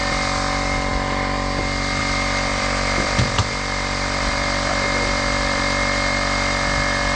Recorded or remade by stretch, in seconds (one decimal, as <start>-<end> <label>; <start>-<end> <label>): 0.0-2.5 recorded; 2.5-5.6 remade; 5.6-7.2 recorded